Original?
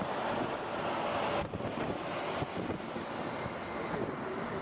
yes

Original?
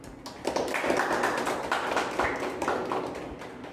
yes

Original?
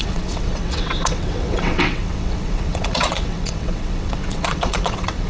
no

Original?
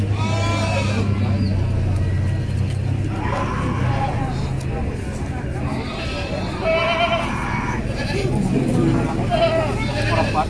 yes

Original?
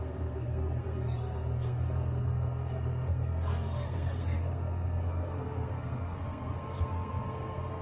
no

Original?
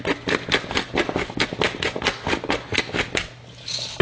yes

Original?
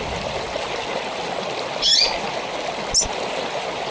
yes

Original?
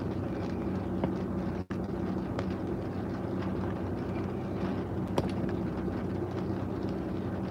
yes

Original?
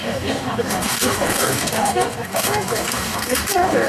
no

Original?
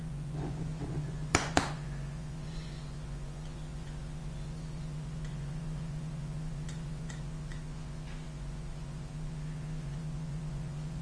no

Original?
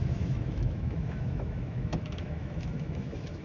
no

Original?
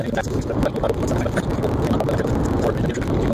yes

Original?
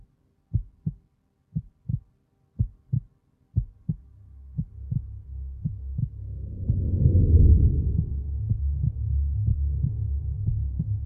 yes